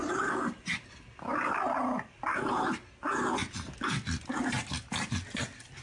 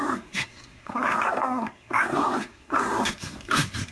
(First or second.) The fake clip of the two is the second